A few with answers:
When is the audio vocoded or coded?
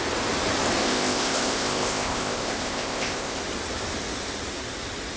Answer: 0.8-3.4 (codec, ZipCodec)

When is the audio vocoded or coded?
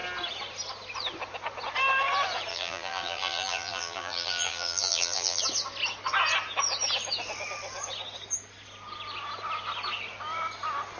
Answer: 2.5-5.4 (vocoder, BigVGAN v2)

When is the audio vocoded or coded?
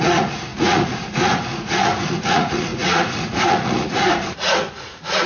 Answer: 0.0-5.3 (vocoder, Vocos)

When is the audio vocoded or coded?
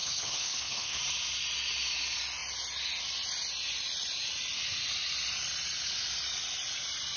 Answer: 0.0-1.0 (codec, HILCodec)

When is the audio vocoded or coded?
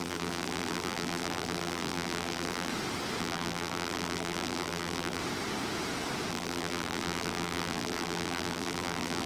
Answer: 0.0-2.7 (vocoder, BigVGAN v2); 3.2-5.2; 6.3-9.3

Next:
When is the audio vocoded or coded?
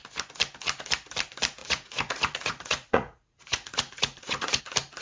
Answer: 1.6-4.6 (vocoder, Vocos)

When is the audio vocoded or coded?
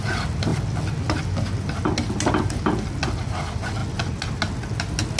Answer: none